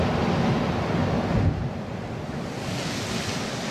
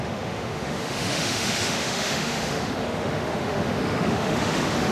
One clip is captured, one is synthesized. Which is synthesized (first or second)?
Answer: second